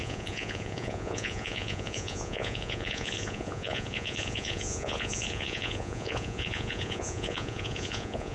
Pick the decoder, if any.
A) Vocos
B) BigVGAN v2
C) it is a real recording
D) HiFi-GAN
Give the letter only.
A